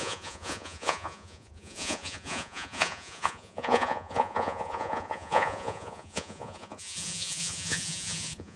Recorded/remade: remade